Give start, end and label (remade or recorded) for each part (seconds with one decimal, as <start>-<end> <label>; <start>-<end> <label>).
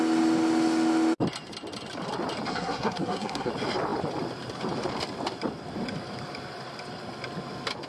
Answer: 0.0-2.5 recorded; 2.5-3.5 remade; 3.5-7.9 recorded